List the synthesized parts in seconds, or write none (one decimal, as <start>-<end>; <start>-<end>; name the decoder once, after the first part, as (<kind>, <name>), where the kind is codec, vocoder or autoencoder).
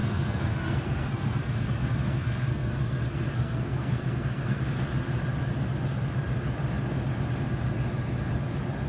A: 0.0-4.6 (codec, SNAC)